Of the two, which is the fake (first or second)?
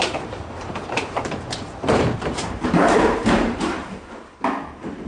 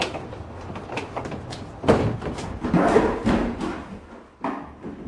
first